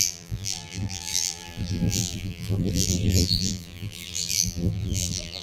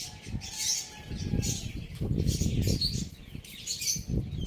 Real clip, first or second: second